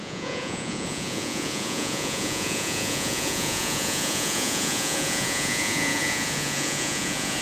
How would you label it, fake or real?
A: fake